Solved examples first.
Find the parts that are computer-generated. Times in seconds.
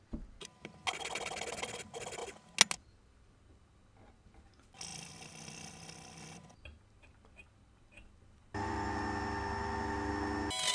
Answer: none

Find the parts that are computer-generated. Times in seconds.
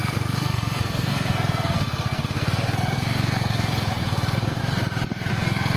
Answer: 0.0-4.6 (codec, SNAC); 5.3-5.8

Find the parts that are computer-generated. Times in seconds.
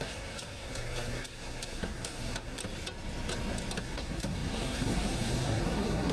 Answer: 0.0-2.6 (codec, SNAC); 3.8-6.1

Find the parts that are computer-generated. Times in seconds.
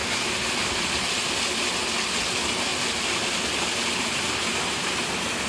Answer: none